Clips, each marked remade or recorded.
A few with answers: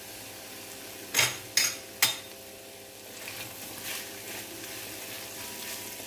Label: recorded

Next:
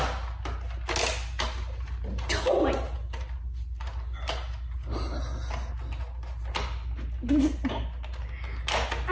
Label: recorded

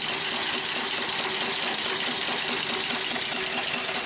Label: recorded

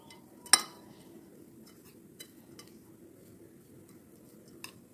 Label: recorded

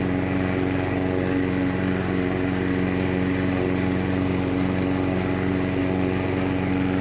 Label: recorded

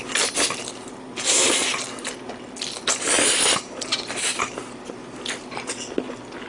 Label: recorded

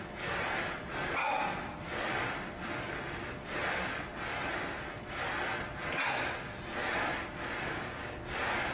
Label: recorded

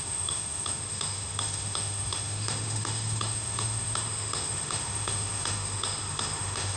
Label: remade